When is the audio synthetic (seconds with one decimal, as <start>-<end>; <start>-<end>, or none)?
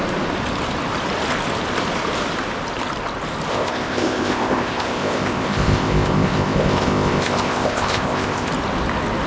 3.5-8.5